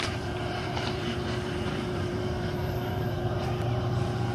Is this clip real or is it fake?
fake